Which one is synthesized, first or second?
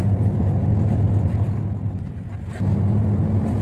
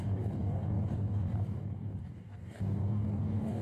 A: second